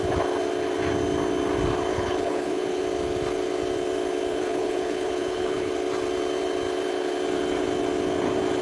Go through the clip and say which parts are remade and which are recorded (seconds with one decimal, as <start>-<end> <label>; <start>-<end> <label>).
0.0-1.9 recorded; 1.9-2.8 remade; 2.8-4.3 recorded; 4.3-5.7 remade; 5.7-8.6 recorded